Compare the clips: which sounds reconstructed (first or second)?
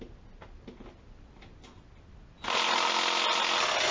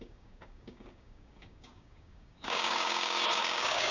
second